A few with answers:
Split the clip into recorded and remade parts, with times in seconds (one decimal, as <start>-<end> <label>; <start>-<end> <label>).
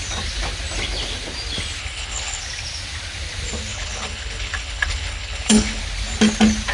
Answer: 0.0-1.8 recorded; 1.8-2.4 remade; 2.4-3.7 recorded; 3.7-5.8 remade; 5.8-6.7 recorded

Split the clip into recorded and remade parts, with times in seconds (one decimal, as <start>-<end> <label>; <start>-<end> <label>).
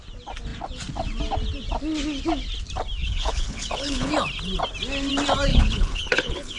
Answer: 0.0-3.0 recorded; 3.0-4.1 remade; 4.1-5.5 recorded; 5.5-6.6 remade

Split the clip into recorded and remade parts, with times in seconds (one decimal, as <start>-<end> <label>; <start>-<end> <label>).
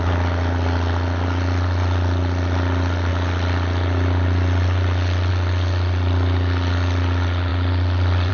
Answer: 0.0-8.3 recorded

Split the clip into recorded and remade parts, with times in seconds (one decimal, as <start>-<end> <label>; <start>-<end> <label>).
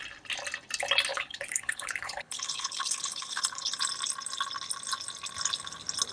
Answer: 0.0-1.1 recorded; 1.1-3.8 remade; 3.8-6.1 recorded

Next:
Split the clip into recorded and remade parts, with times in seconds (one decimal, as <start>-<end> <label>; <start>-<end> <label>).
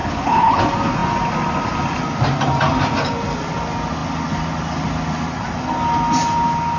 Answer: 0.0-0.6 remade; 0.6-6.8 recorded